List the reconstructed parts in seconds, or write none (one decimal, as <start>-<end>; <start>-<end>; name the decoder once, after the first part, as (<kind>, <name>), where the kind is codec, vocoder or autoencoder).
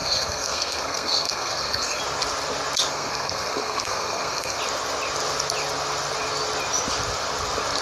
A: 0.0-2.0 (codec, SNAC); 2.9-4.6